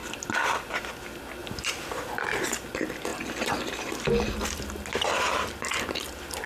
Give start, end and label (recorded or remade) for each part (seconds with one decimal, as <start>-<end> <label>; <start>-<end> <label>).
0.0-0.9 remade; 0.9-1.4 recorded; 1.4-2.2 remade; 2.2-6.5 recorded